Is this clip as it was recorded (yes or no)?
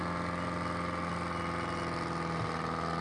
yes